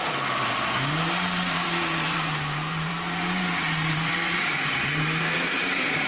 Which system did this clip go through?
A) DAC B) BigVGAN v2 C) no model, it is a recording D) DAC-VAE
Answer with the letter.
B